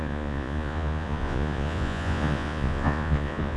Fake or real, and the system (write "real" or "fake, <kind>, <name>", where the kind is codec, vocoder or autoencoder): fake, vocoder, Vocos